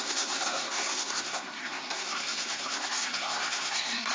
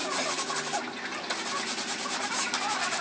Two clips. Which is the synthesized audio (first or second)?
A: first